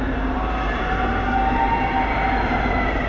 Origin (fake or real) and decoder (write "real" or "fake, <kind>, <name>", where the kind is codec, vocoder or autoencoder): fake, vocoder, BigVGAN v2